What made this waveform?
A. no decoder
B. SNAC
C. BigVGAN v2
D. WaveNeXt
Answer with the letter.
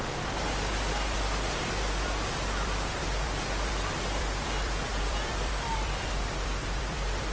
C